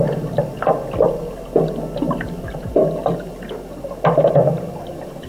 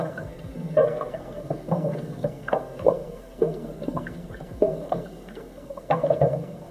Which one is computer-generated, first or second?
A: second